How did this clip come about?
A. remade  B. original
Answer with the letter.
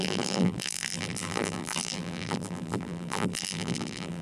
A